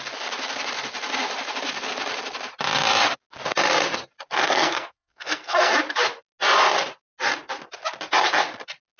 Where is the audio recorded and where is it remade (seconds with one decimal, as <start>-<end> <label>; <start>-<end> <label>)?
0.0-4.4 recorded; 4.4-5.7 remade; 5.7-9.0 recorded